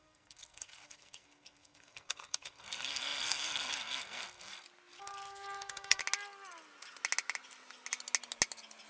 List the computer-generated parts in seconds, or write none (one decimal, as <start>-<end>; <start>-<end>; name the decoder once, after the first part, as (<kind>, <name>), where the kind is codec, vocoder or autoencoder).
0.0-4.5 (codec, SNAC); 5.0-6.0